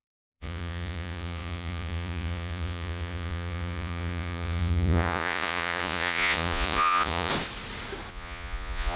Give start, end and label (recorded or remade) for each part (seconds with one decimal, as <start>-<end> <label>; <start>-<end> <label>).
0.0-7.3 remade; 7.3-8.1 recorded; 8.1-9.0 remade